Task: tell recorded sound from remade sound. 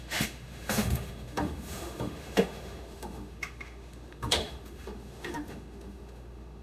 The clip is remade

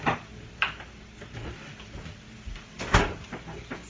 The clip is recorded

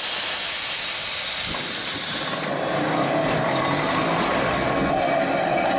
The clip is recorded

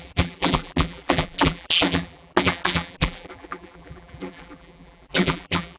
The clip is remade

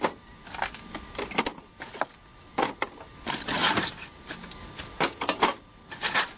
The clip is recorded